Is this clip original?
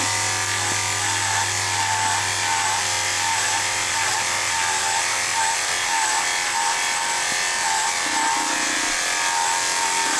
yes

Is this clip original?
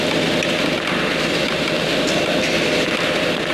no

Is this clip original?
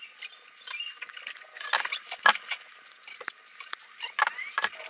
no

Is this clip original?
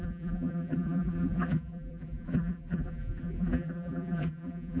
no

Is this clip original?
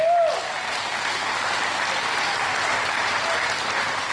yes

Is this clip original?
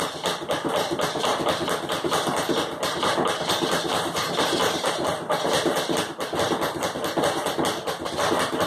yes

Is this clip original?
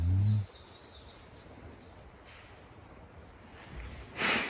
yes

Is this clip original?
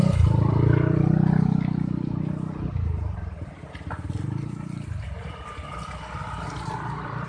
no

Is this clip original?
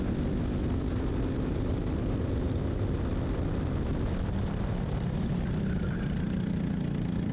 yes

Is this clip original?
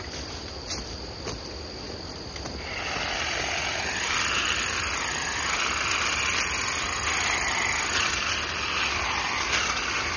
yes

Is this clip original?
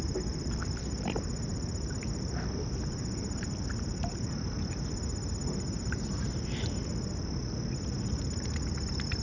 no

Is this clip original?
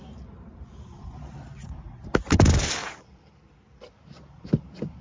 yes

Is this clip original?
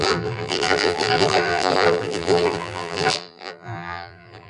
no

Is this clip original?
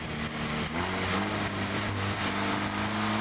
yes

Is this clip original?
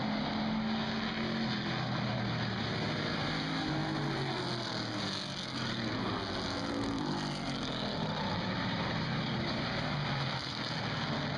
yes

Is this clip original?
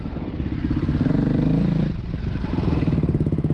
no